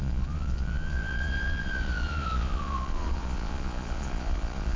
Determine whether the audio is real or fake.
fake